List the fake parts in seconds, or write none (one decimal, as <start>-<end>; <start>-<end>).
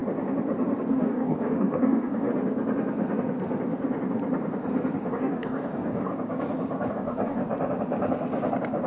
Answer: 0.9-2.3; 5.1-6.1; 6.9-7.4